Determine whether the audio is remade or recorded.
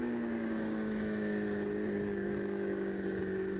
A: remade